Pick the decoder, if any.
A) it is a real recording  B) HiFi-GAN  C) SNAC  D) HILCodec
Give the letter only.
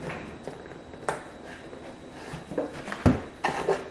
A